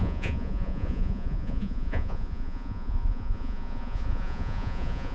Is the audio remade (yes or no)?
yes